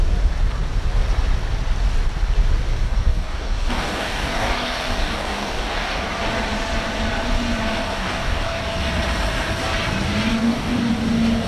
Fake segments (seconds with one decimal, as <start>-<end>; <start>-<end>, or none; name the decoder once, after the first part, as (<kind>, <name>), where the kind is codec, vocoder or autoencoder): 2.7-6.1 (codec, DAC); 7.9-8.6; 10.3-10.9

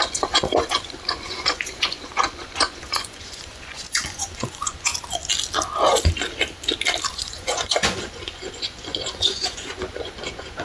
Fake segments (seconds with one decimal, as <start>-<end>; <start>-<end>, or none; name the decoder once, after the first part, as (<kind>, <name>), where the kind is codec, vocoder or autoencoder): 0.0-4.9 (vocoder, Vocos); 7.1-10.6

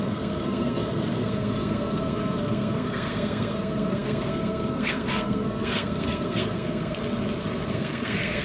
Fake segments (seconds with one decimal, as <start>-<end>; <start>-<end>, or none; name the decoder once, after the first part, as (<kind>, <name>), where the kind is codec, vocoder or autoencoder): 0.0-7.0 (codec, SNAC); 7.7-8.4

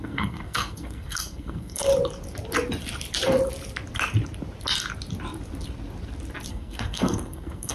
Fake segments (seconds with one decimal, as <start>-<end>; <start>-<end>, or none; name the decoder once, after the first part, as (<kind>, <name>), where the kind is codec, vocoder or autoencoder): 0.0-1.9 (codec, SNAC); 6.5-7.7